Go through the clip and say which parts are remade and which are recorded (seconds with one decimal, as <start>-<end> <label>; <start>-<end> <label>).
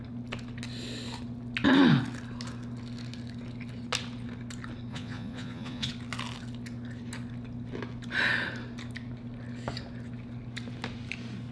0.0-4.9 recorded; 4.9-5.9 remade; 5.9-11.5 recorded